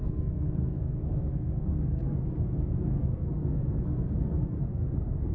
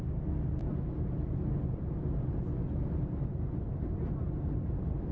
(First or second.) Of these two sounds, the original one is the second